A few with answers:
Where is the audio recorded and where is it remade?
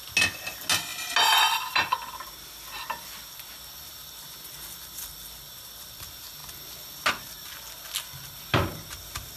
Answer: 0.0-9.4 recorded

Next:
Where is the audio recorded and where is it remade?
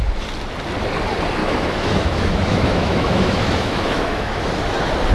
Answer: 0.0-1.4 recorded; 1.4-4.5 remade; 4.5-5.1 recorded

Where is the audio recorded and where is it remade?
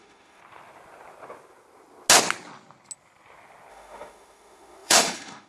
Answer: 0.0-0.4 remade; 0.4-3.7 recorded; 3.7-5.5 remade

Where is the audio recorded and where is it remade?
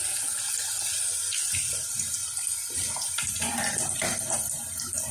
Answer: 0.0-5.1 recorded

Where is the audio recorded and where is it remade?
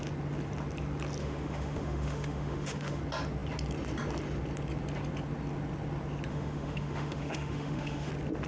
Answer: 0.0-1.2 recorded; 1.2-3.0 remade; 3.0-6.3 recorded; 6.3-8.1 remade; 8.1-8.5 recorded